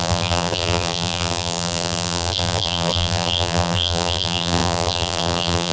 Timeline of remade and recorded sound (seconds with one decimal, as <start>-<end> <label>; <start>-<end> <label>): 0.0-5.7 remade